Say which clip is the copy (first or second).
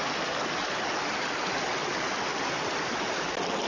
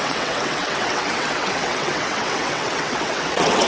second